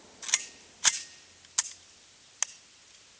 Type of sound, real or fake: real